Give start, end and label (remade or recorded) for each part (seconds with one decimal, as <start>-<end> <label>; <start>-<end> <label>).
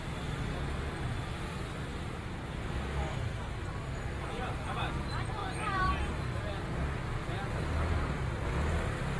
0.0-1.9 recorded; 1.9-2.8 remade; 2.8-5.4 recorded; 5.4-5.9 remade; 5.9-7.2 recorded; 7.2-8.1 remade; 8.1-9.2 recorded